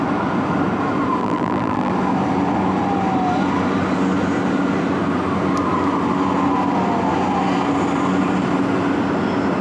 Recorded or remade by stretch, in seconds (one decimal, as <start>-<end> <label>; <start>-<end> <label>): 0.0-1.2 recorded; 1.2-1.9 remade; 1.9-9.6 recorded